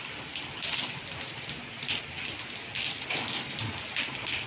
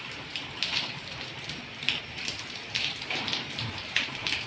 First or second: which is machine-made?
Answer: second